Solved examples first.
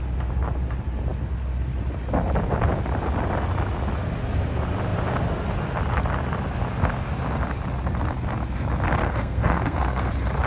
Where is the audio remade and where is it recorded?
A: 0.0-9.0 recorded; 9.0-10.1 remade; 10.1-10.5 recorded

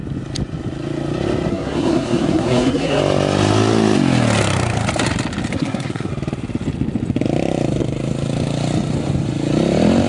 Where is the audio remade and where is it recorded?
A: 0.0-1.5 recorded; 1.5-3.0 remade; 3.0-5.5 recorded; 5.5-6.1 remade; 6.1-10.1 recorded

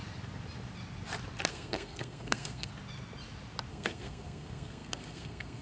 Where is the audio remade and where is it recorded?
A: 0.0-1.5 recorded; 1.5-2.7 remade; 2.7-3.7 recorded; 3.7-5.6 remade

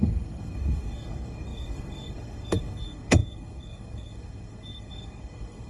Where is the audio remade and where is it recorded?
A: 0.0-5.7 remade

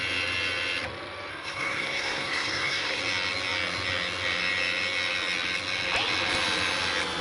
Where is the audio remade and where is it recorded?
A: 0.0-1.3 recorded; 1.3-3.0 remade; 3.0-7.2 recorded

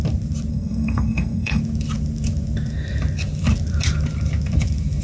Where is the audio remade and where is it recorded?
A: 0.0-0.5 recorded; 0.5-1.6 remade; 1.6-5.0 recorded

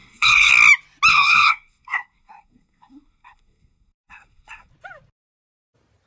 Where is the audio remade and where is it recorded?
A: 0.0-0.5 remade; 0.5-1.1 recorded; 1.1-4.7 remade; 4.7-6.1 recorded

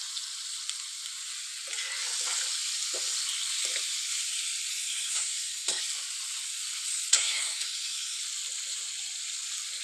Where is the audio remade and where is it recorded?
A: 0.0-4.7 recorded; 4.7-5.8 remade; 5.8-7.1 recorded; 7.1-8.2 remade; 8.2-9.8 recorded